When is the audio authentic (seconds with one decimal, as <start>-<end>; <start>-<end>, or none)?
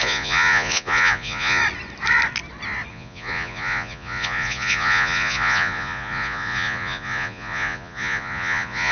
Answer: 1.6-2.9